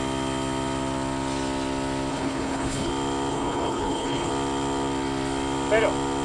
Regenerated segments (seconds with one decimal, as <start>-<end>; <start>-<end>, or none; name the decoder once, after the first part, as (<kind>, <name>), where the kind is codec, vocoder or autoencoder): 2.1-2.9 (codec, HILCodec); 3.3-4.3